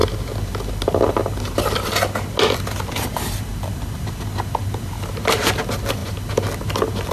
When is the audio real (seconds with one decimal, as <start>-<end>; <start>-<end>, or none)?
0.0-7.1

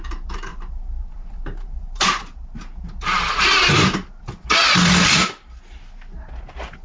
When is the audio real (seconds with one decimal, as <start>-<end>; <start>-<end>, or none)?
0.0-0.5; 2.7-6.8

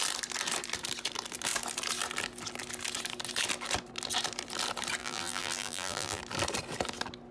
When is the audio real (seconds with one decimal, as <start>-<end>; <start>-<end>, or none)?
0.0-5.0; 6.2-7.3

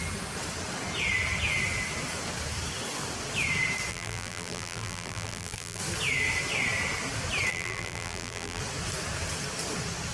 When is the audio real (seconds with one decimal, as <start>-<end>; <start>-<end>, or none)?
0.0-3.9; 5.8-7.5; 8.6-10.1

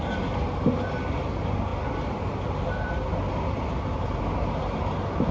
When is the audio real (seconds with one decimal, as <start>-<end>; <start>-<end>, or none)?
0.0-5.3

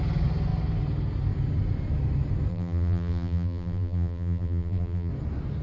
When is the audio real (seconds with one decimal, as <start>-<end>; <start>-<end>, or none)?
0.0-2.5; 5.1-5.6

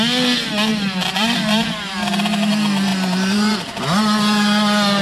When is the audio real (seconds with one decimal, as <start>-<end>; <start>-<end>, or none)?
0.0-0.7; 2.5-2.9; 3.8-5.0

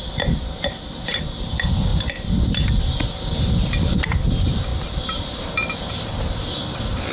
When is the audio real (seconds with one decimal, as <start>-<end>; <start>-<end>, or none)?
none